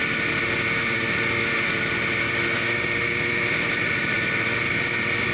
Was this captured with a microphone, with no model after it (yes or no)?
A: yes